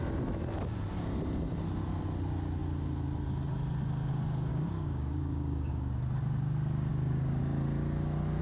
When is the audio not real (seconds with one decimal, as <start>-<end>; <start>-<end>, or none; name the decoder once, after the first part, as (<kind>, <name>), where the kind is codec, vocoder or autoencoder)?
4.5-5.7 (codec, DAC); 6.9-7.4